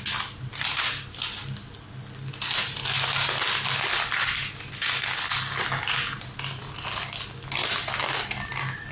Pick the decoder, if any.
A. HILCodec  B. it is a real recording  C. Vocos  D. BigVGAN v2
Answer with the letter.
B